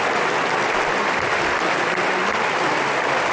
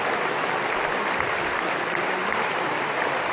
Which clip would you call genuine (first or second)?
first